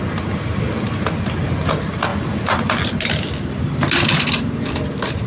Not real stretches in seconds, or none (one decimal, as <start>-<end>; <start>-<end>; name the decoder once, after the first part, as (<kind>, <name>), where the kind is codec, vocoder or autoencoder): none